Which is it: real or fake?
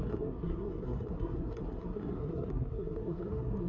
fake